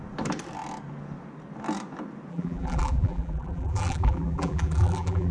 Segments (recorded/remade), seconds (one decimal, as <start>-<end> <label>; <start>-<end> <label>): 0.0-2.3 recorded; 2.3-5.3 remade